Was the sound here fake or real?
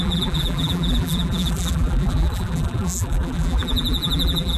fake